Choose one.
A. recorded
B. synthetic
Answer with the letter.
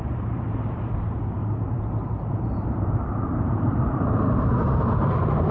B